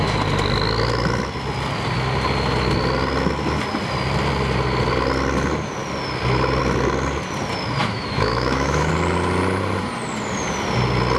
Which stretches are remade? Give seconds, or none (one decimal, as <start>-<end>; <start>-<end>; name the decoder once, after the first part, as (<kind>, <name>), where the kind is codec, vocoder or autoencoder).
7.8-8.9 (autoencoder, DAC-VAE)